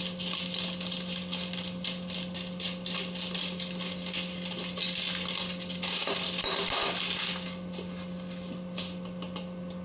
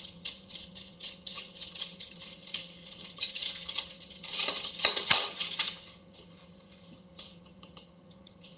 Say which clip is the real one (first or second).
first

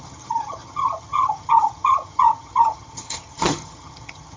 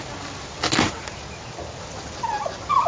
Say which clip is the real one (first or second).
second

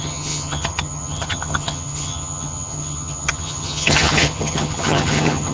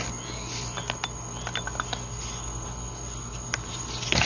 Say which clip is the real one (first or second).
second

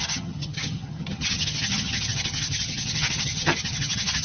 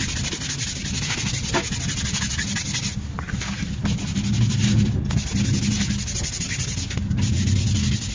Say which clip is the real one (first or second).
second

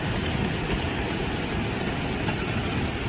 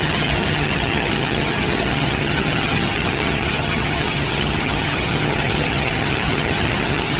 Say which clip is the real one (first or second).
first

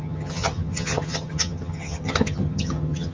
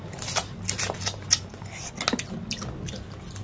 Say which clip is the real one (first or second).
second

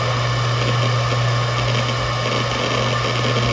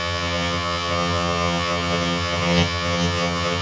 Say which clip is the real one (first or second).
first